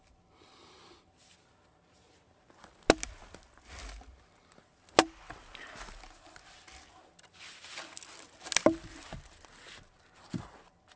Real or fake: real